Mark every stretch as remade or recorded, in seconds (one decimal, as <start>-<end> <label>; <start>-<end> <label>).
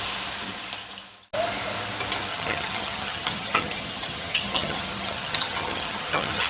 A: 0.0-2.3 recorded; 2.3-6.5 remade